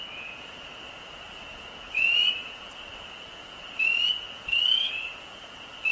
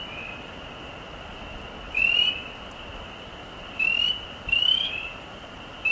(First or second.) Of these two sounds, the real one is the second